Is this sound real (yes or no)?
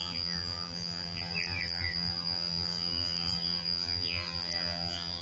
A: no